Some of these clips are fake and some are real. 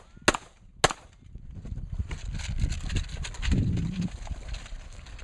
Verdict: real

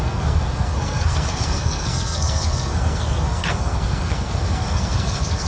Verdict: fake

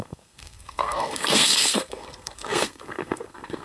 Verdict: fake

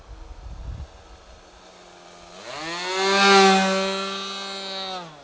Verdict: real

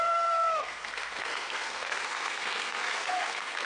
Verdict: fake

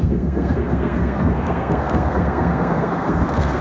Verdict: fake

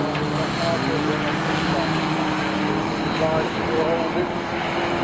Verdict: real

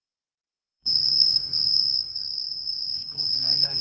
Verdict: fake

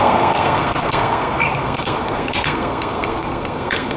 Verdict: fake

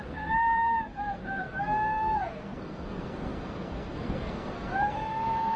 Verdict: fake